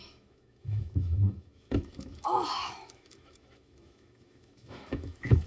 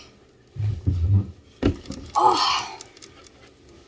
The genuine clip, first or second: second